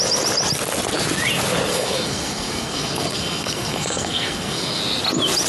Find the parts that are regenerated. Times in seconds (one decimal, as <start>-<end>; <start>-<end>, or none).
1.7-4.8